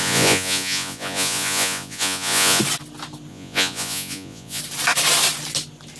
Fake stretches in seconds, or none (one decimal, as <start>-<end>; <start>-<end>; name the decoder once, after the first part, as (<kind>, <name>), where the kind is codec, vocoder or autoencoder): 0.0-2.6 (vocoder, Vocos); 3.3-4.6